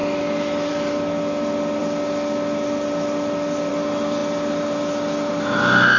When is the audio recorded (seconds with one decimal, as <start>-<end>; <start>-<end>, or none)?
0.0-6.0